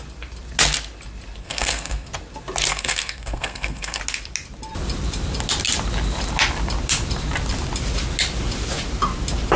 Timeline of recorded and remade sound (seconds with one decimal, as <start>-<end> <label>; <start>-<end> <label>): 0.0-1.4 recorded; 1.4-2.1 remade; 2.1-2.7 recorded; 2.7-4.0 remade; 4.0-9.6 recorded